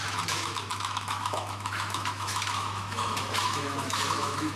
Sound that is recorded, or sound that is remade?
remade